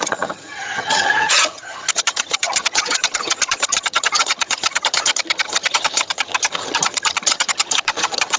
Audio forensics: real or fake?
fake